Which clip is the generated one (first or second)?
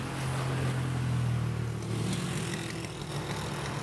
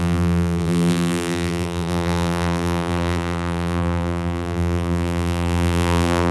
second